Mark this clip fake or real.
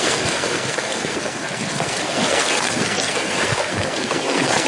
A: fake